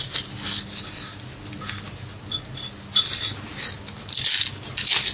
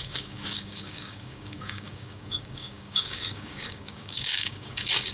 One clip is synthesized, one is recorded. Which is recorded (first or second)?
first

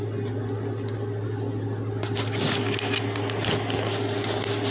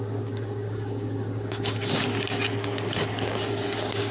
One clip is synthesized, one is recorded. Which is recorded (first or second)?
first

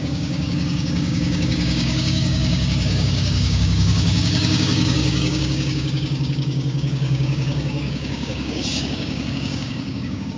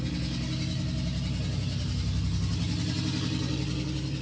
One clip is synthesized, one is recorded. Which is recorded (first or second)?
second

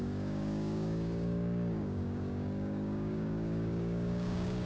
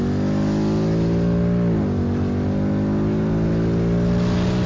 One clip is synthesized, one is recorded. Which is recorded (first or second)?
second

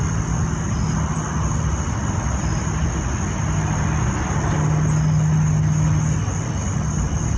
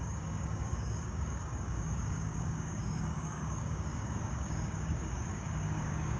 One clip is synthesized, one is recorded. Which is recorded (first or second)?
first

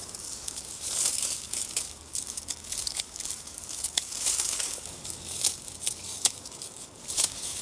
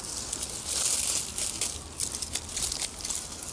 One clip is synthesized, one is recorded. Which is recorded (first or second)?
second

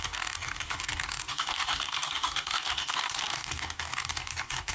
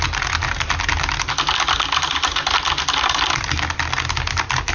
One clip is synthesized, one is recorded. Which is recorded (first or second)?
second